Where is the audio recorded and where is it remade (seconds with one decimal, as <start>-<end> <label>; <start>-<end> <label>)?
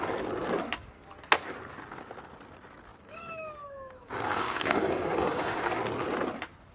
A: 0.0-2.9 recorded; 2.9-5.7 remade; 5.7-6.7 recorded